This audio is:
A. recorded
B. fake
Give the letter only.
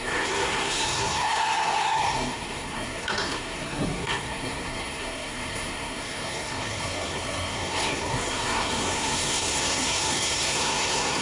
B